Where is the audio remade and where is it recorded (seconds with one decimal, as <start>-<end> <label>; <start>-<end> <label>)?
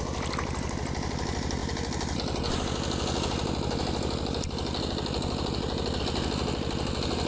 0.0-7.3 recorded